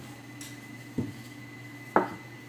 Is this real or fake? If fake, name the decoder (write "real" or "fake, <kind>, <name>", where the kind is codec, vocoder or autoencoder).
real